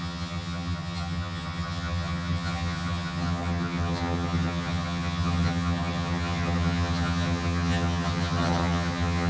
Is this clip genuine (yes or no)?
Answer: no